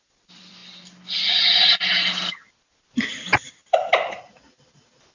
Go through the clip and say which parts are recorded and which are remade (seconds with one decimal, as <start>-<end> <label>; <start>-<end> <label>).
0.0-5.1 recorded